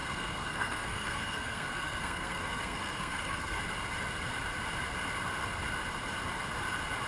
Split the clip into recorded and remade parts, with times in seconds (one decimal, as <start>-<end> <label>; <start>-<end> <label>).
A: 0.0-3.6 remade; 3.6-7.1 recorded